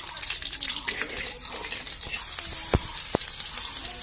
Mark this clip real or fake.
real